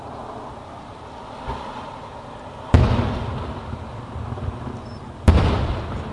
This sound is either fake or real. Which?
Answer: real